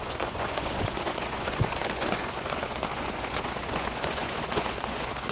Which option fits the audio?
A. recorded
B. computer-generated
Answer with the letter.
B